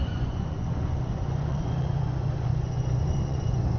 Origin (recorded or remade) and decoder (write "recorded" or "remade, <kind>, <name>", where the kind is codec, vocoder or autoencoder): remade, vocoder, Vocos